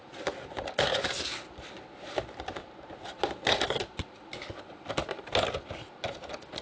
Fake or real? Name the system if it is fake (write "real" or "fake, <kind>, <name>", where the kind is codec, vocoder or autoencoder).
real